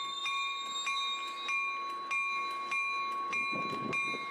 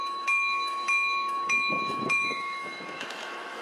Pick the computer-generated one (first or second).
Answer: second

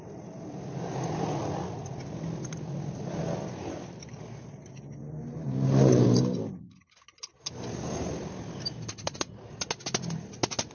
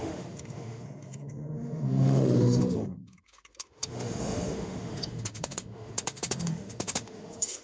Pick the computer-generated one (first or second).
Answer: second